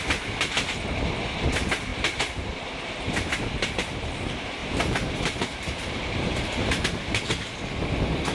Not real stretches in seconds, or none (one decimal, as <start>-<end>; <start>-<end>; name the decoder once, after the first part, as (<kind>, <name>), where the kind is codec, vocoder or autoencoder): 4.6-6.8 (vocoder, BigVGAN v2)